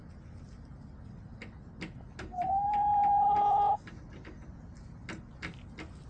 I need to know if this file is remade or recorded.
recorded